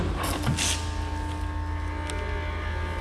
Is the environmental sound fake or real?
real